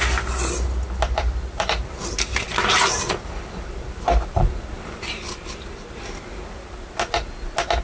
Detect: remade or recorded recorded